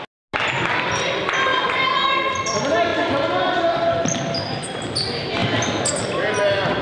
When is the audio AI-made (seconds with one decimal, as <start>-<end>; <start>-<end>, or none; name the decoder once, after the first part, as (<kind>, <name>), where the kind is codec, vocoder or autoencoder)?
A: none